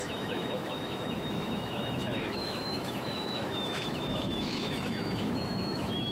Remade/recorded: remade